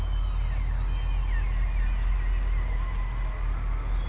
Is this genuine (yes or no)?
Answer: yes